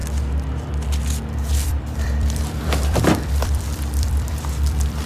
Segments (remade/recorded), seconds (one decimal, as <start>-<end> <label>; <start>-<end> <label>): 0.0-1.5 recorded; 1.5-5.1 remade